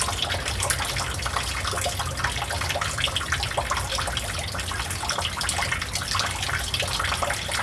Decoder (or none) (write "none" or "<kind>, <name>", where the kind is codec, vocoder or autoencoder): none